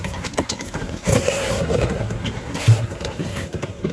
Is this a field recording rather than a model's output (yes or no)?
no